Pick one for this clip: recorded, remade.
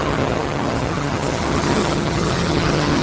remade